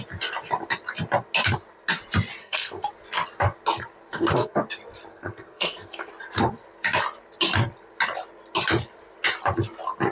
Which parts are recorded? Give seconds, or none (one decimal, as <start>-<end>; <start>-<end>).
0.0-2.4; 2.9-4.1; 4.6-5.1; 6.1-10.1